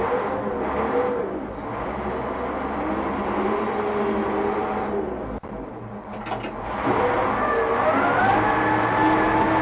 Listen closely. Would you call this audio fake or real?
real